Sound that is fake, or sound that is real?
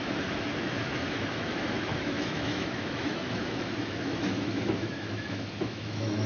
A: fake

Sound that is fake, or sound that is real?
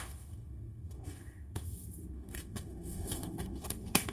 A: fake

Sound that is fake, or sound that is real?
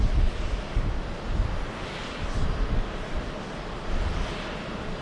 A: real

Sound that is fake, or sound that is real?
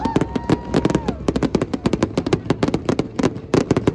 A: real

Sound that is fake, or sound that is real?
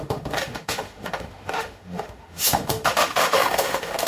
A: fake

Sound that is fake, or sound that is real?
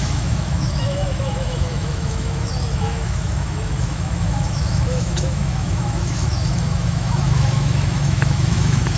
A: fake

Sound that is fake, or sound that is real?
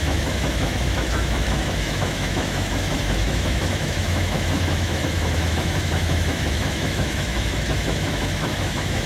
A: fake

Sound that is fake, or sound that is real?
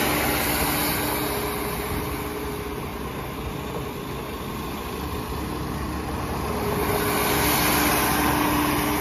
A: real